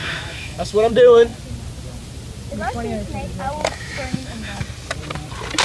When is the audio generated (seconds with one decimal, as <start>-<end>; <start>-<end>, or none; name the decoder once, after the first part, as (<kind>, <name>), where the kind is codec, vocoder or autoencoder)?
0.0-0.9 (autoencoder, DAC-VAE); 3.6-4.6